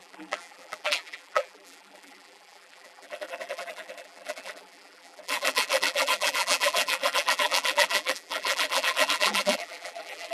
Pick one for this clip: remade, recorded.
remade